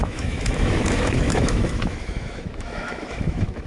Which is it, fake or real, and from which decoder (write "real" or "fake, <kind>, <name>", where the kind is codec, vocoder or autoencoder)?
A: fake, autoencoder, DAC-VAE